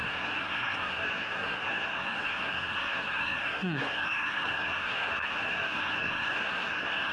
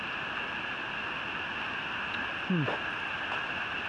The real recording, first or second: second